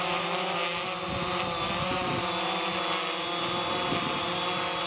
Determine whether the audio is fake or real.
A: real